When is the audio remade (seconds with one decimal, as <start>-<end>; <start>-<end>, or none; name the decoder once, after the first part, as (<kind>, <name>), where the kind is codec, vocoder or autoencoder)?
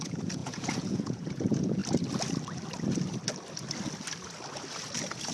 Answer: 0.0-1.8 (vocoder, Vocos)